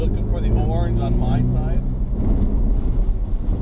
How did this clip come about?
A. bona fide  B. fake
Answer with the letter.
A